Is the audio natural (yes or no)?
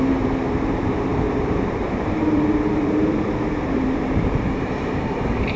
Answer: no